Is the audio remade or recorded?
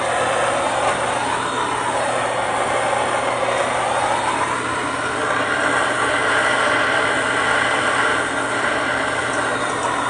recorded